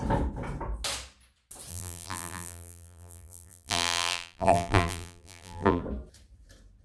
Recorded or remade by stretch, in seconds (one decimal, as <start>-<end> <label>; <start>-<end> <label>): 0.0-1.7 recorded; 1.7-5.8 remade; 5.8-6.8 recorded